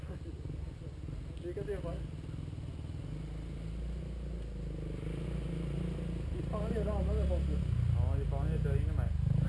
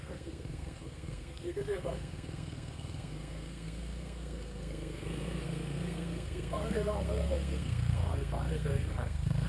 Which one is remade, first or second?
second